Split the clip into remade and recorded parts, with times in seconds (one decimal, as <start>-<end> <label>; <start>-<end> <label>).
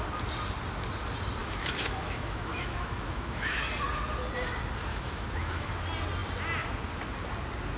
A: 0.0-1.4 recorded; 1.4-3.6 remade; 3.6-4.9 recorded; 4.9-5.7 remade; 5.7-7.8 recorded